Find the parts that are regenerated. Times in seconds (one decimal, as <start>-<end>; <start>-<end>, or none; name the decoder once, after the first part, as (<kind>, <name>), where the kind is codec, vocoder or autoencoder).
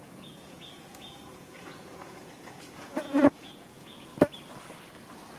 0.0-4.1 (vocoder, Vocos)